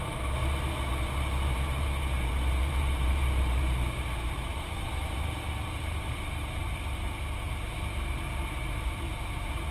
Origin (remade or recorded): remade